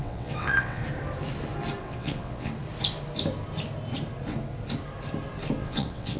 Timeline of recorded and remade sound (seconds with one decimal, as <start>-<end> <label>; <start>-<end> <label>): 0.0-0.8 remade; 0.8-1.8 recorded; 1.8-2.5 remade; 2.5-5.6 recorded; 5.6-6.2 remade